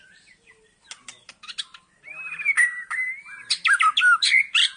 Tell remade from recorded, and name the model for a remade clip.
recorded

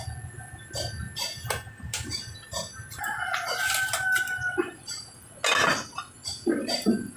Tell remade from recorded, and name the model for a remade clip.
recorded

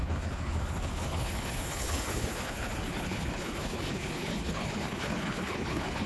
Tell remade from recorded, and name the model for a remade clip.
remade, codec, HILCodec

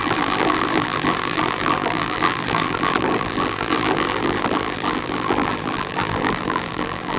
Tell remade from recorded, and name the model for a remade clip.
remade, vocoder, BigVGAN v2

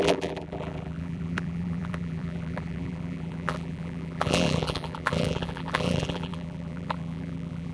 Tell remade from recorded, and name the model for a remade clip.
remade, vocoder, BigVGAN v2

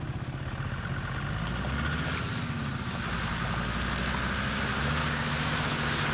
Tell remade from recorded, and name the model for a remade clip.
recorded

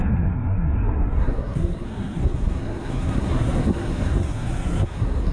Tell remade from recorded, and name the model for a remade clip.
remade, codec, SNAC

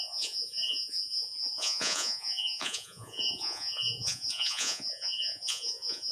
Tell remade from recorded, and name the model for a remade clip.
remade, vocoder, Vocos